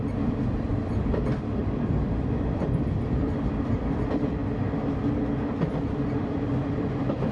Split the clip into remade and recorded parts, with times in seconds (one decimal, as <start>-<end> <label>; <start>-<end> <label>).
0.0-0.7 remade; 0.7-1.6 recorded; 1.6-4.4 remade; 4.4-5.8 recorded; 5.8-7.3 remade